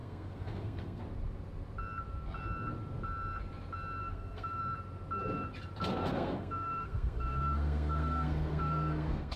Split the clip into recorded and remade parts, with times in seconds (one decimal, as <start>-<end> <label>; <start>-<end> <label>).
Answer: 0.0-1.0 remade; 1.0-4.0 recorded; 4.0-4.6 remade; 4.6-5.9 recorded; 5.9-9.4 remade